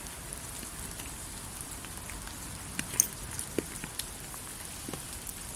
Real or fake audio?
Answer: real